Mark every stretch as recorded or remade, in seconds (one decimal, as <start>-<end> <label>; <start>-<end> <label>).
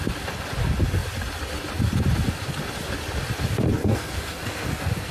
0.0-3.8 recorded; 3.8-5.1 remade